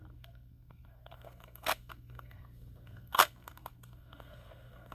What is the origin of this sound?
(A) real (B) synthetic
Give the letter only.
B